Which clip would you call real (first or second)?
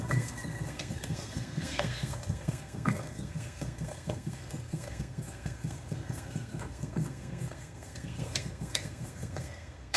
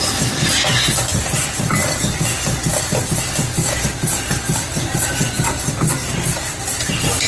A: second